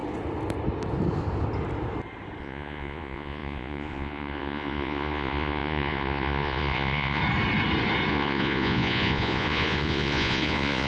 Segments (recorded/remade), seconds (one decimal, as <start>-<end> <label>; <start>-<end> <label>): 0.0-2.4 recorded; 2.4-7.2 remade; 7.2-8.1 recorded; 8.1-10.9 remade